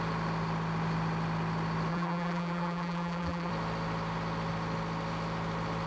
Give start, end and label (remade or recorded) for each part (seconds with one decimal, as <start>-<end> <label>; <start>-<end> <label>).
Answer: 0.0-1.9 recorded; 1.9-3.5 remade; 3.5-5.9 recorded